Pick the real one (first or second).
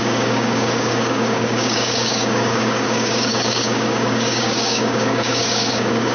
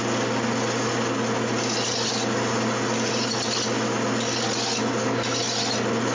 second